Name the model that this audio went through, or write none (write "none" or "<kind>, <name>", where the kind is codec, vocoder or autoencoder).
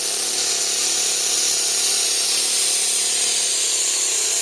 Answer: none